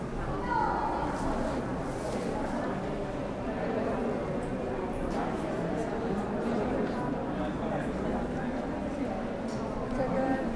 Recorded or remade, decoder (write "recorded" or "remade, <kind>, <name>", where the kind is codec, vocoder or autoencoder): recorded